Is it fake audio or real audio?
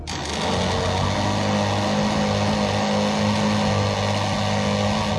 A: real